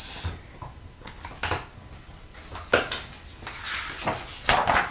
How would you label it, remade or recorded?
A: recorded